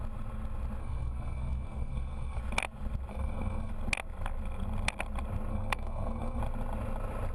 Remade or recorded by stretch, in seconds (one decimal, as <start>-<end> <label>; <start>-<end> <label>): 0.0-0.8 recorded; 0.8-2.4 remade; 2.4-3.1 recorded; 3.1-3.7 remade; 3.7-5.5 recorded; 5.5-6.4 remade; 6.4-7.3 recorded